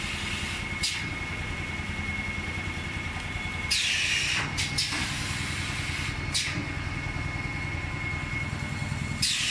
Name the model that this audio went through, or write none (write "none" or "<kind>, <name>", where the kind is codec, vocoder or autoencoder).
none